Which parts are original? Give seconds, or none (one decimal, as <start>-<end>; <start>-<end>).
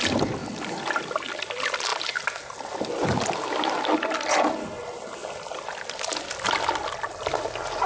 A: 0.0-7.9